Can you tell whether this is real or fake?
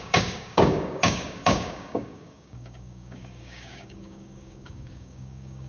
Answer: fake